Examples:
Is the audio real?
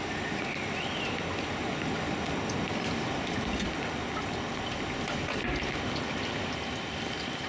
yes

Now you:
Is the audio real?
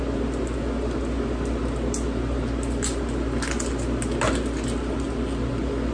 yes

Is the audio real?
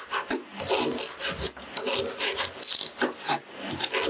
yes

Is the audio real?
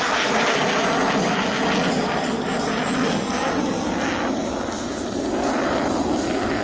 yes